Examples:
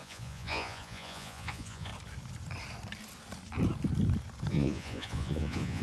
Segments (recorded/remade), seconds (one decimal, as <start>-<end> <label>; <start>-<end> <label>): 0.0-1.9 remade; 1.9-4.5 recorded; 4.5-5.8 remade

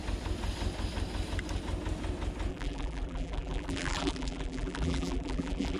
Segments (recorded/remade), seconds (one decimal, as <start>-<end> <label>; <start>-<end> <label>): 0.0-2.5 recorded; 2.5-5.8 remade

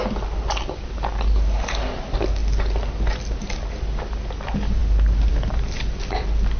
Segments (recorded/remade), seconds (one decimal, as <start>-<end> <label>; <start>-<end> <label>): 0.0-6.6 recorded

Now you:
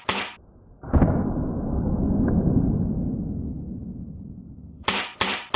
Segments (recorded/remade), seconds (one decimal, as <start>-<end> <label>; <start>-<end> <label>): 0.0-3.8 recorded; 3.8-4.9 remade; 4.9-5.6 recorded

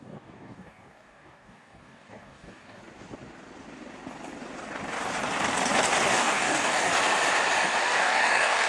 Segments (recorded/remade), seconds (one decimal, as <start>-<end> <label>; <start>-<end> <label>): 0.0-2.8 remade; 2.8-6.1 recorded; 6.1-6.9 remade; 6.9-7.8 recorded; 7.8-8.7 remade